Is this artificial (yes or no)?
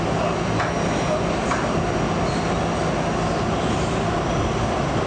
no